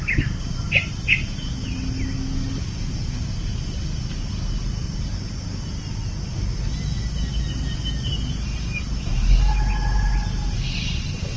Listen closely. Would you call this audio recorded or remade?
recorded